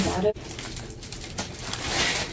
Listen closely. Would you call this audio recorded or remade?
recorded